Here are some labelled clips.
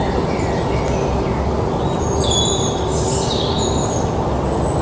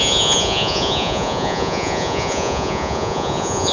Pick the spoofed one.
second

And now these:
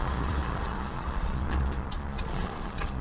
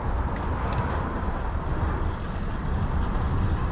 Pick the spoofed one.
first